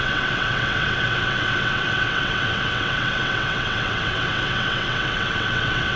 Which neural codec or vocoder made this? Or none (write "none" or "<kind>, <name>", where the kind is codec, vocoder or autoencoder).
vocoder, WaveNeXt